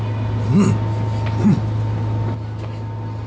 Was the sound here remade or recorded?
recorded